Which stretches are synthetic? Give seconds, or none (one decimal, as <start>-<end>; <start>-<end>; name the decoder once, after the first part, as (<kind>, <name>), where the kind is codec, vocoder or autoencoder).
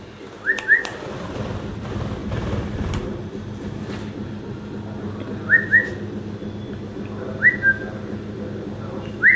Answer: 2.2-3.8 (vocoder, BigVGAN v2)